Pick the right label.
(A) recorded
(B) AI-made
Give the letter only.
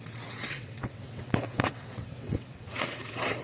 B